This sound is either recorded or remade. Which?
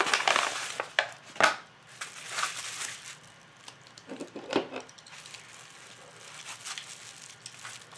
recorded